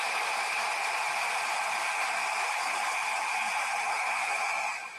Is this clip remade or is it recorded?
recorded